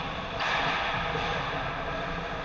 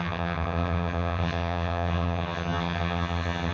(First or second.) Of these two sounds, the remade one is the second